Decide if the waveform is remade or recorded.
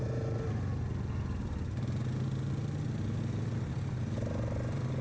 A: recorded